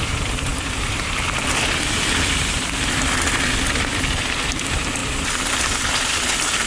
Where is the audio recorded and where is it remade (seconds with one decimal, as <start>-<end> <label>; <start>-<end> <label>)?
0.0-6.7 remade

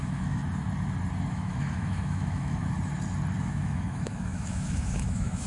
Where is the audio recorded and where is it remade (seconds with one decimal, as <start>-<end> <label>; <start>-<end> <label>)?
0.0-0.4 remade; 0.4-1.3 recorded; 1.3-2.6 remade; 2.6-3.4 recorded; 3.4-5.5 remade

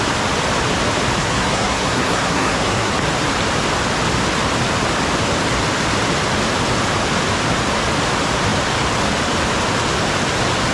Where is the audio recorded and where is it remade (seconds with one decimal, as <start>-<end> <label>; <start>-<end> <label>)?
0.0-1.2 recorded; 1.2-2.9 remade; 2.9-10.7 recorded

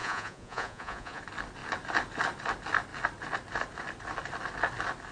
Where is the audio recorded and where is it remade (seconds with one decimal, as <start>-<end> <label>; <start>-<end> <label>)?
0.0-1.2 remade; 1.2-5.1 recorded

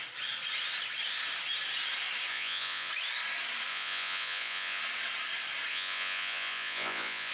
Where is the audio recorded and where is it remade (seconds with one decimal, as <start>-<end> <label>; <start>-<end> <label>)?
0.0-2.3 recorded; 2.3-2.9 remade; 2.9-3.7 recorded; 3.7-4.8 remade; 4.8-5.7 recorded; 5.7-7.3 remade

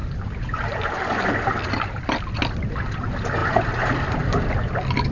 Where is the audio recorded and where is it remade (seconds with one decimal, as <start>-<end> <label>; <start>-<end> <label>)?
0.0-5.1 recorded

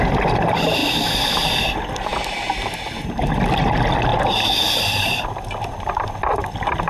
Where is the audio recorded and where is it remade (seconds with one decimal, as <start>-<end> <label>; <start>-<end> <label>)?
0.0-4.1 recorded; 4.1-5.9 remade; 5.9-6.9 recorded

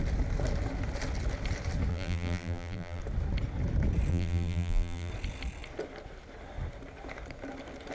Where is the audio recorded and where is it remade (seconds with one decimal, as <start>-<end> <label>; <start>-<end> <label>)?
0.0-1.9 recorded; 1.9-3.0 remade; 3.0-4.1 recorded; 4.1-5.1 remade; 5.1-7.9 recorded